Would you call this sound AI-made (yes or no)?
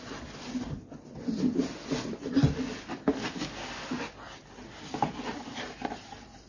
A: no